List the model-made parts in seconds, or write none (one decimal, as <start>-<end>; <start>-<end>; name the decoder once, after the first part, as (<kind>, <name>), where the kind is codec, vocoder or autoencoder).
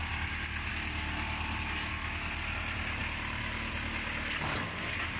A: none